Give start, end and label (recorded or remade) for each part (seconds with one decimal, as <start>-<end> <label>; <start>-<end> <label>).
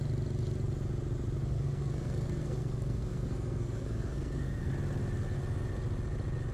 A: 0.0-1.4 recorded; 1.4-4.7 remade; 4.7-6.5 recorded